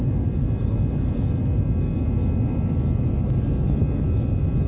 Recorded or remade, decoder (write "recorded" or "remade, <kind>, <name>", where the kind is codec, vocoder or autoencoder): recorded